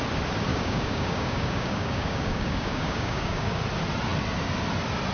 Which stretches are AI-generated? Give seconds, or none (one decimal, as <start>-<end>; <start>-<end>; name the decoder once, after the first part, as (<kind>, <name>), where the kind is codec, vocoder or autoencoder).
0.5-3.6 (codec, DAC)